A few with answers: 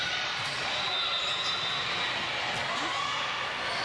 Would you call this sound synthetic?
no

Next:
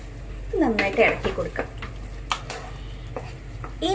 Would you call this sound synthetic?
no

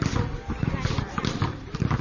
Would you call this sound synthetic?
no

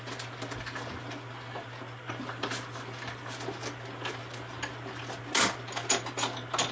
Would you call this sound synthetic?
no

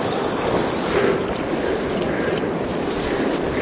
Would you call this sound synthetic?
no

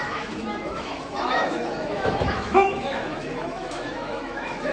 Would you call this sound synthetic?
yes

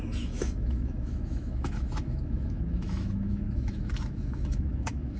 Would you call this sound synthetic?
yes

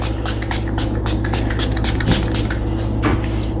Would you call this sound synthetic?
no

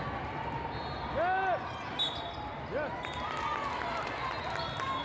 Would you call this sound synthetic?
no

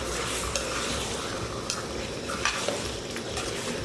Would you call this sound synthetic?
no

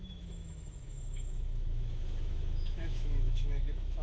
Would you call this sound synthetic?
yes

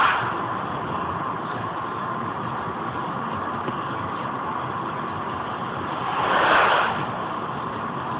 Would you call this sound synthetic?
no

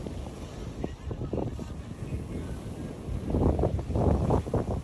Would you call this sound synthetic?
no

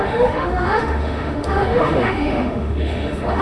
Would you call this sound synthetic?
yes